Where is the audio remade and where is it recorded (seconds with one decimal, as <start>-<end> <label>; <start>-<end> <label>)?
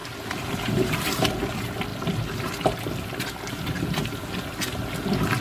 0.0-1.3 remade; 1.3-5.4 recorded